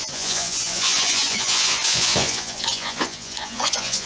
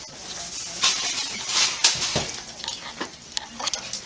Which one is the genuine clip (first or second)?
second